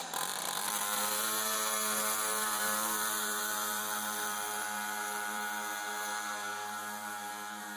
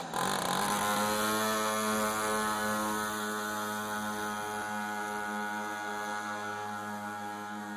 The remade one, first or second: first